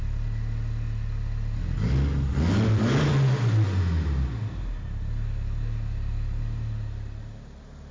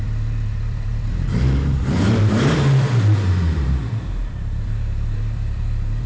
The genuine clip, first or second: first